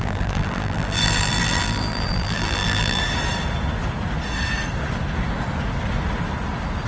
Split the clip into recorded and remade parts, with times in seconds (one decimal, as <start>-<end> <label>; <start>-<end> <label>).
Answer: 0.0-3.0 remade; 3.0-6.9 recorded